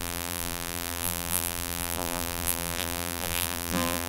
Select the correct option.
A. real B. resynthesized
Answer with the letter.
B